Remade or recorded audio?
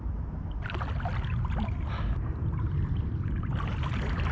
recorded